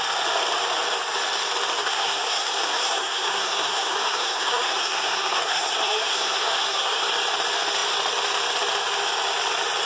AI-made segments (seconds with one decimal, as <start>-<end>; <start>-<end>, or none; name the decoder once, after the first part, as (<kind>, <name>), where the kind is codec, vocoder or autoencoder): 1.8-7.0 (codec, SNAC)

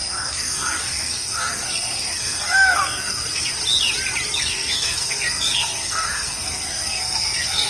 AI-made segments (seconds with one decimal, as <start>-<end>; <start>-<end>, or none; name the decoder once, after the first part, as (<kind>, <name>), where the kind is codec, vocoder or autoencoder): 0.0-3.6 (codec, SNAC); 4.4-7.7

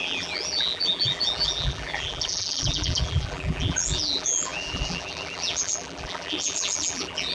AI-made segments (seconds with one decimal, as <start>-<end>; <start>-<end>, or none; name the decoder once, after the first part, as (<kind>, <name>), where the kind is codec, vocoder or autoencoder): 0.0-7.3 (vocoder, BigVGAN v2)

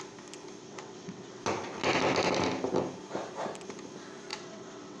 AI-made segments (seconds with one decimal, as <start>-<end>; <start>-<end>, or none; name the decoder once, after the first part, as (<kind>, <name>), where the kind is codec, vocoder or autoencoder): 0.6-1.4 (vocoder, WaveNeXt); 4.3-5.0

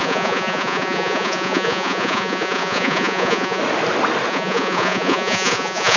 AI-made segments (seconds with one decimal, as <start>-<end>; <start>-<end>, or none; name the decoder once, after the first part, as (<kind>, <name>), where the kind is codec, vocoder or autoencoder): 0.0-3.6 (vocoder, Vocos); 4.3-6.0

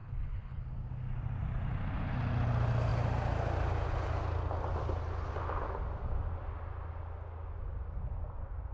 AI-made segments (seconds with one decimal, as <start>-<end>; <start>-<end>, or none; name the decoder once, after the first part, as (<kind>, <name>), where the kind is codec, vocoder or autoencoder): 0.0-0.6 (codec, HILCodec)